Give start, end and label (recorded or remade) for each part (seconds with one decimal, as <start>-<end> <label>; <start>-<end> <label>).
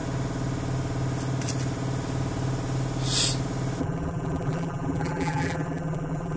0.0-3.8 recorded; 3.8-6.4 remade